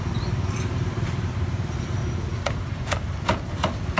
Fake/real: real